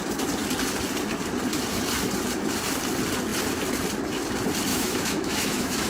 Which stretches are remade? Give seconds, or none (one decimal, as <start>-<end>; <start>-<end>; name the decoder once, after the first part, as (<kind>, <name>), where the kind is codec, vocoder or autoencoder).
4.7-5.9 (autoencoder, DAC-VAE)